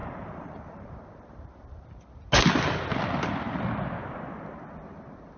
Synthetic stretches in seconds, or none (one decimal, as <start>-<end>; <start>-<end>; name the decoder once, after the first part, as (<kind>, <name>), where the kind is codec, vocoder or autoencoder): 0.0-2.0 (vocoder, BigVGAN v2)